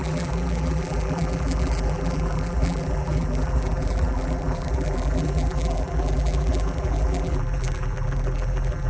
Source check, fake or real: fake